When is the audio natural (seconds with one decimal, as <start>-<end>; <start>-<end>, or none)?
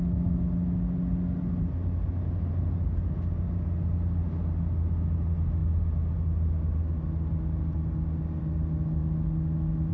0.0-9.9